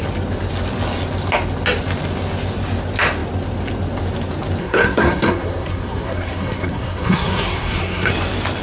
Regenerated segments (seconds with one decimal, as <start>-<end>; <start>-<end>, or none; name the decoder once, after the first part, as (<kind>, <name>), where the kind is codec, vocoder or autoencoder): 4.6-8.1 (codec, SNAC)